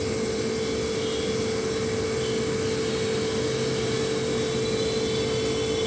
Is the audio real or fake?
real